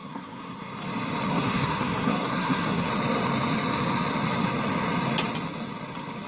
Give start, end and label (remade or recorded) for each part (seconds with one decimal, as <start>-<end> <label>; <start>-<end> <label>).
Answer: 0.0-0.7 remade; 0.7-1.3 recorded; 1.3-2.9 remade; 2.9-6.3 recorded